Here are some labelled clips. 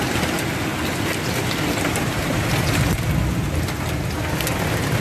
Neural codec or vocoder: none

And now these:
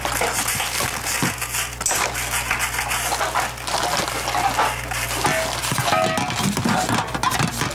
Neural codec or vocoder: none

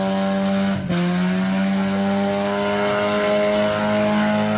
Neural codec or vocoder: none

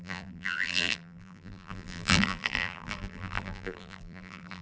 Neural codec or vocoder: vocoder, BigVGAN v2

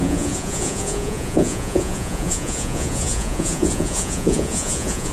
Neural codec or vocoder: vocoder, Vocos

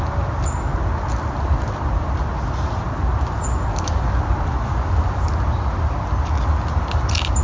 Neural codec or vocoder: none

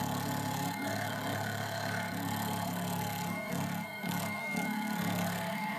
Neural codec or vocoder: codec, SNAC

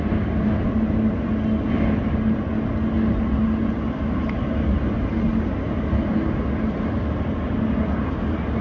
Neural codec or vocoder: none